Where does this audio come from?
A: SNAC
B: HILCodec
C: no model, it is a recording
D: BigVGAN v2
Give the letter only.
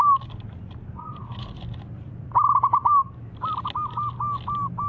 C